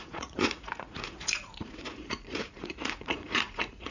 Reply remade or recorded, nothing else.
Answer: remade